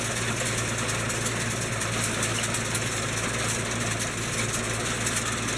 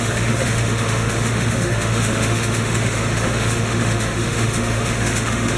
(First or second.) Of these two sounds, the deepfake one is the second